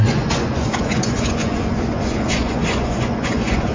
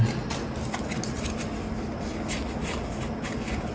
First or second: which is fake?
first